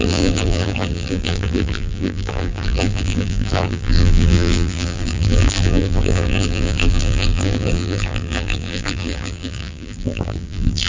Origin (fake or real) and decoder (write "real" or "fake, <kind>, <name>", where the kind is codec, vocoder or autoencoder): fake, vocoder, BigVGAN v2